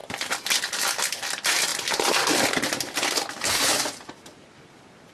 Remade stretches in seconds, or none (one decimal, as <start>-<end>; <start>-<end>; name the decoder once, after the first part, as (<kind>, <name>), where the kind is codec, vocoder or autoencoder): none